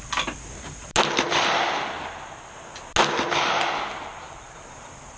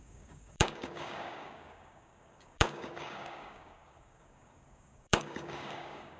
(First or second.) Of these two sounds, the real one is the first